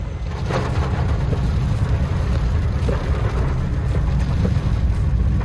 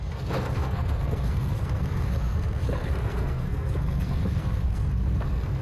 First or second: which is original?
first